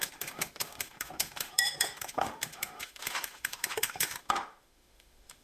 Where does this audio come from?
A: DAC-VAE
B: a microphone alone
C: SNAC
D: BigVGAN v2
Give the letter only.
A